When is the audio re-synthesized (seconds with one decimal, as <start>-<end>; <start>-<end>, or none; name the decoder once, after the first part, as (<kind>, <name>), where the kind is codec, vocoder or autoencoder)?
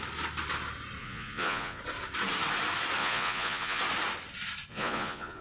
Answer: 1.0-1.8 (vocoder, Vocos); 3.0-3.8; 4.7-5.4